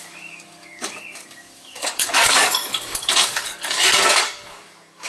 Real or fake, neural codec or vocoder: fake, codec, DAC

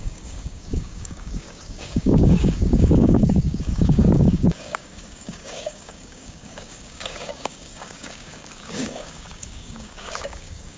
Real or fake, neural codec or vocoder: fake, codec, DAC